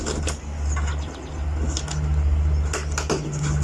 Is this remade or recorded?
recorded